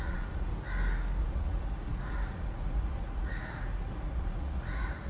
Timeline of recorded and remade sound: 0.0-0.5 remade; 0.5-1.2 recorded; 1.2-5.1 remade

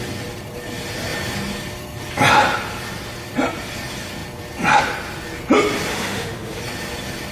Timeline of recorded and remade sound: 0.0-5.9 recorded; 5.9-6.6 remade; 6.6-7.3 recorded